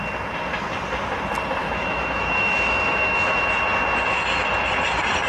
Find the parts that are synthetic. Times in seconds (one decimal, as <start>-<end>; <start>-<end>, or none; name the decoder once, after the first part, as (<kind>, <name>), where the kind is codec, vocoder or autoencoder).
1.6-3.5 (autoencoder, DAC-VAE)